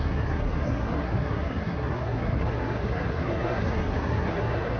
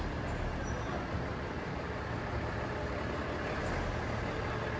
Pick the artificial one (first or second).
first